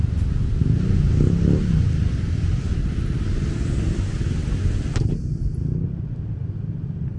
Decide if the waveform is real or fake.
real